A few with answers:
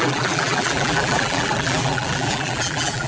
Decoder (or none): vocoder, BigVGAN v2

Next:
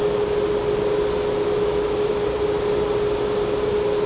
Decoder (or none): none